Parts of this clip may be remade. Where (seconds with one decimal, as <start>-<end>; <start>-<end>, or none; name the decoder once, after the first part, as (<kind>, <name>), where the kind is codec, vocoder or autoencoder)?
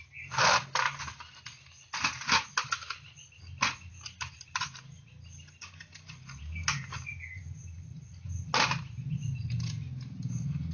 none